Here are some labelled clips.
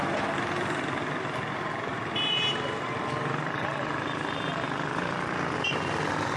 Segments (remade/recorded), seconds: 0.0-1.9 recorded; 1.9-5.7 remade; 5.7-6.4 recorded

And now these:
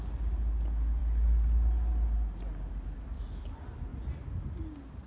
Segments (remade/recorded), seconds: 0.0-5.1 recorded